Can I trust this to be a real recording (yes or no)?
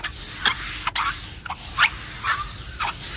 yes